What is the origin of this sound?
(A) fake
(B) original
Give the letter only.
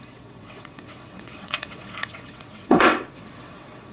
A